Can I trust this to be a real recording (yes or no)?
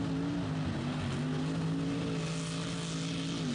yes